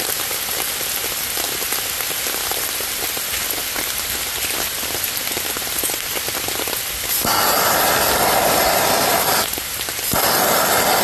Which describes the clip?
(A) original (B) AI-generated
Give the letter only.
A